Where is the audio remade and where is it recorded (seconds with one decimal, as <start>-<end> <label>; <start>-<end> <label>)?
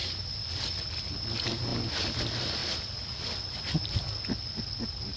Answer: 0.0-5.2 recorded